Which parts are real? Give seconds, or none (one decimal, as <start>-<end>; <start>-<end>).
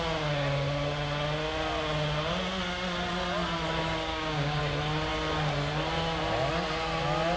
0.0-4.1; 4.6-7.4